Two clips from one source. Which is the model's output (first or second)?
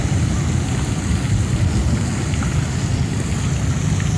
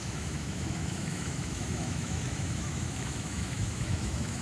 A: second